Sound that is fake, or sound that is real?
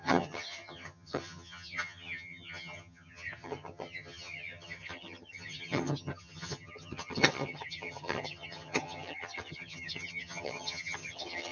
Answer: fake